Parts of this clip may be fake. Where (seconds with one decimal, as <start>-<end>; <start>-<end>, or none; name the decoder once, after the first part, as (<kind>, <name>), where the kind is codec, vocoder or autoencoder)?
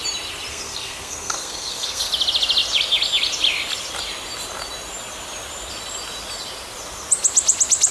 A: 0.5-2.1 (codec, SNAC)